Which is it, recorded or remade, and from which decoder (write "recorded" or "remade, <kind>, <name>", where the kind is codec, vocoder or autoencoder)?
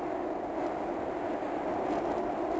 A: recorded